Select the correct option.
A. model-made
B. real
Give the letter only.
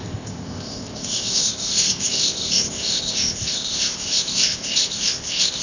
A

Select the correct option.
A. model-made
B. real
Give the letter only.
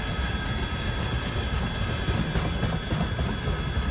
B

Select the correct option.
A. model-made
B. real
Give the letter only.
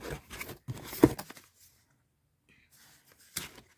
B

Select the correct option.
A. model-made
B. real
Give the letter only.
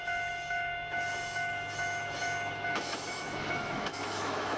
A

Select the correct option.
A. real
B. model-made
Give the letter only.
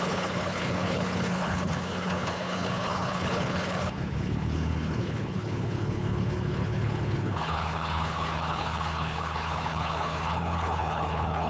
B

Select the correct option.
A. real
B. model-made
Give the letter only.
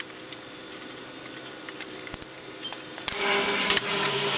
B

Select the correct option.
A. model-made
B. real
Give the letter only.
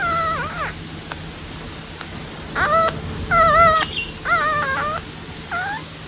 B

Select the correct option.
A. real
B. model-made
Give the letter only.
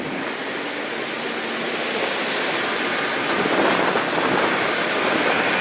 A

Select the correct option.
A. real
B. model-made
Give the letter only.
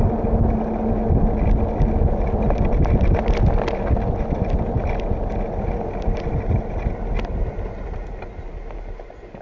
A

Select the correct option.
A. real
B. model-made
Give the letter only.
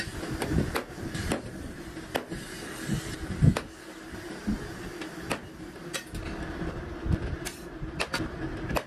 A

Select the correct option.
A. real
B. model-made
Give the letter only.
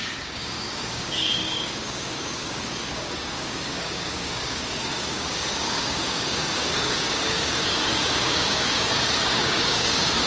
B